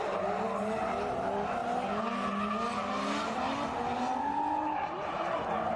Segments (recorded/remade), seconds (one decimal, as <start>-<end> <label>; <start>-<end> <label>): 0.0-5.8 recorded